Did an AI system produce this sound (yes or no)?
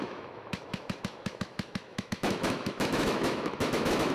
yes